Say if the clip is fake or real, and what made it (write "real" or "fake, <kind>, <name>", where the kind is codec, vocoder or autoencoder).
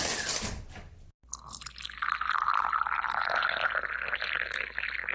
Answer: real